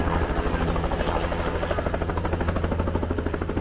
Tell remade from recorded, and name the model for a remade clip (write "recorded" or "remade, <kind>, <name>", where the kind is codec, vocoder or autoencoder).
recorded